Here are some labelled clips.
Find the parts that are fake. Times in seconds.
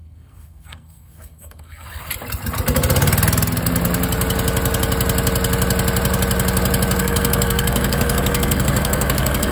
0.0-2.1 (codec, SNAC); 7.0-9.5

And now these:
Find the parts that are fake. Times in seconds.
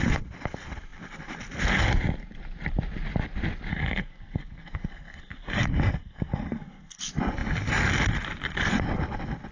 3.7-7.0 (codec, SNAC)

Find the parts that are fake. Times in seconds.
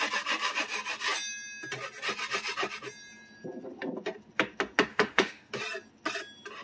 4.9-5.5 (autoencoder, DAC-VAE)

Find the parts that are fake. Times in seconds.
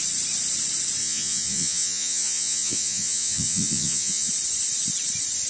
1.0-4.3 (vocoder, Vocos)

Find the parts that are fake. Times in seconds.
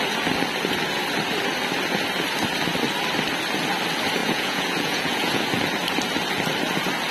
4.2-5.4 (vocoder, Vocos)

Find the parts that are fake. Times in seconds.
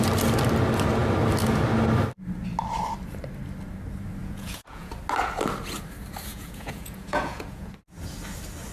4.2-4.9 (vocoder, Vocos); 6.3-7.7